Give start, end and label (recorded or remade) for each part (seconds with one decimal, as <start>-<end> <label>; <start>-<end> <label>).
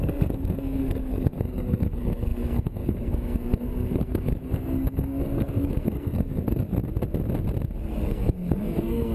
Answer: 0.0-6.8 remade; 6.8-7.8 recorded; 7.8-9.1 remade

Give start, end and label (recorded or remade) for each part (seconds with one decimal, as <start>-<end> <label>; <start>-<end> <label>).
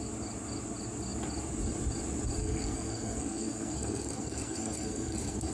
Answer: 0.0-2.4 recorded; 2.4-5.5 remade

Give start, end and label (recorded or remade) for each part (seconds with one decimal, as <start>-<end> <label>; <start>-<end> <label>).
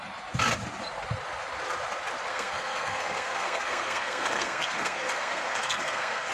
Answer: 0.0-2.3 recorded; 2.3-6.3 remade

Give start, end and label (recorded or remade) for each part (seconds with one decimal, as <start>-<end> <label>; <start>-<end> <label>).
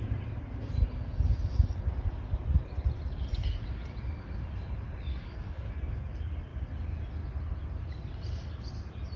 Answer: 0.0-5.1 recorded; 5.1-5.7 remade; 5.7-9.2 recorded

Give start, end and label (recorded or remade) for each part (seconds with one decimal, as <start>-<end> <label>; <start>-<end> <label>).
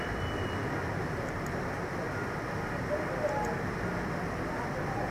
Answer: 0.0-5.1 recorded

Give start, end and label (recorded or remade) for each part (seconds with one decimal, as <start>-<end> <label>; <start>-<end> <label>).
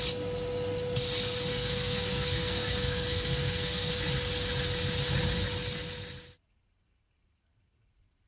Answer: 0.0-1.5 recorded; 1.5-3.9 remade; 3.9-8.3 recorded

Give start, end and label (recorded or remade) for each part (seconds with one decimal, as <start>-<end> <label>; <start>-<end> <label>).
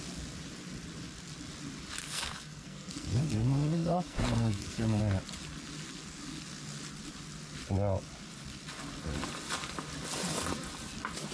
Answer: 0.0-2.0 recorded; 2.0-5.0 remade; 5.0-11.3 recorded